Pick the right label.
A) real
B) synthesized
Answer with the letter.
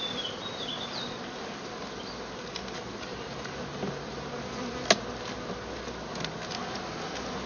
A